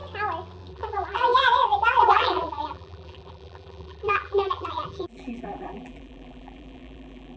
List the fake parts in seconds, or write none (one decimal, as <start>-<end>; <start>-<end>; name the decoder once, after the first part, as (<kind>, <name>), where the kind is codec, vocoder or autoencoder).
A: 0.7-7.4 (vocoder, BigVGAN v2)